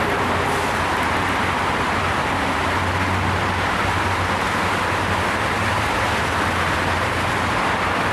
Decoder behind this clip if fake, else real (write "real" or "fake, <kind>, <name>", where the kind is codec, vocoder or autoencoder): real